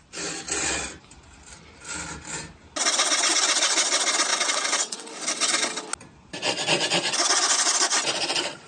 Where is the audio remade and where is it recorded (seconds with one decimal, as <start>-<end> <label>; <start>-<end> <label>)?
0.0-4.3 recorded; 4.3-5.1 remade; 5.1-8.7 recorded